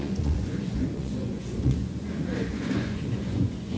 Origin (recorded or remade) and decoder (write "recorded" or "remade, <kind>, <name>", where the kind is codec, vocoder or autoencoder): remade, vocoder, Vocos